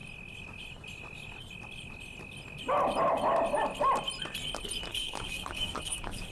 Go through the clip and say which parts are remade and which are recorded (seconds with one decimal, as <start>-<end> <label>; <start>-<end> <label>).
0.0-4.9 recorded; 4.9-6.3 remade